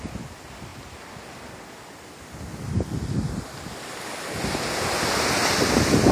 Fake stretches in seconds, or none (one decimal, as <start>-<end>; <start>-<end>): none